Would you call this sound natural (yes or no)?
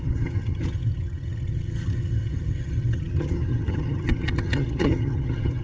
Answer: no